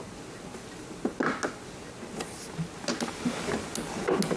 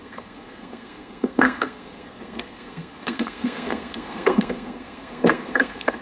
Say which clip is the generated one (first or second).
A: second